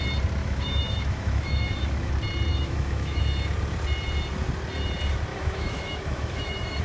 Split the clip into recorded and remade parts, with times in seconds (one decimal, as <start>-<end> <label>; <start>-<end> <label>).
0.0-0.4 recorded; 0.4-2.1 remade; 2.1-2.5 recorded; 2.5-3.2 remade; 3.2-5.3 recorded; 5.3-6.8 remade